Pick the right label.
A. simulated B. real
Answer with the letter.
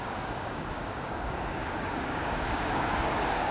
A